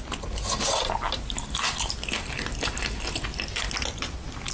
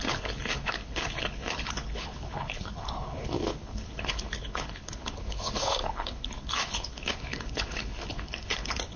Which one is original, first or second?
first